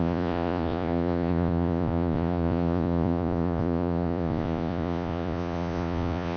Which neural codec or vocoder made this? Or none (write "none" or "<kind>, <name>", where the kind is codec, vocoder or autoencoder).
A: vocoder, Vocos